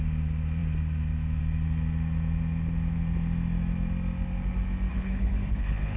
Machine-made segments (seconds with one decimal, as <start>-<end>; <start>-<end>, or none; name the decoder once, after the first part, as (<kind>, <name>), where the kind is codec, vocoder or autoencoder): 4.9-6.0 (codec, HILCodec)